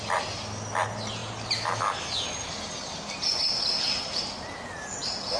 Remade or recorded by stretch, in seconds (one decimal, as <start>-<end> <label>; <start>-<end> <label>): 0.0-5.4 recorded